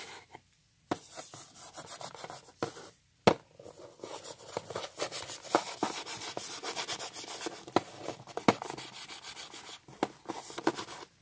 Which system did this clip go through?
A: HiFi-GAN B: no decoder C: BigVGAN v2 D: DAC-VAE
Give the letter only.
B